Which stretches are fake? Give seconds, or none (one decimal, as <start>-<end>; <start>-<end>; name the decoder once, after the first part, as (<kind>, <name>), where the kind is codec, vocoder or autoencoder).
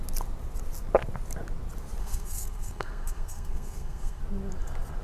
2.0-4.2 (codec, SNAC)